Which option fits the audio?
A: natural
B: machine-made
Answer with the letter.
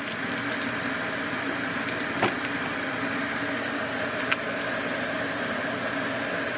A